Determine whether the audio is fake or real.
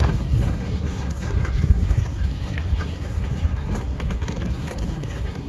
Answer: fake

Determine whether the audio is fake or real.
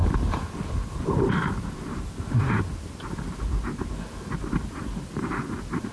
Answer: real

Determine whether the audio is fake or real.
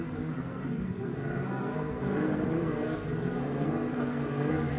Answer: fake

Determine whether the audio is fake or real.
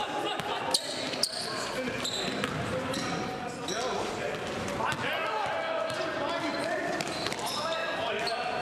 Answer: real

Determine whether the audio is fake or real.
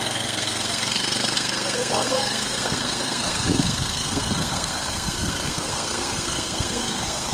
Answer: fake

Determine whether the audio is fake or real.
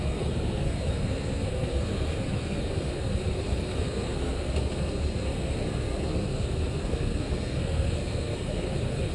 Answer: fake